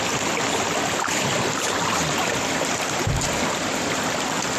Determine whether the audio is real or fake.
fake